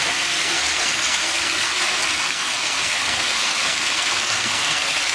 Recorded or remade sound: remade